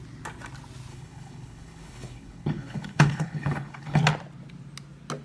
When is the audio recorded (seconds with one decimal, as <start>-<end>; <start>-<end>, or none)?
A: 0.0-0.9; 4.0-5.2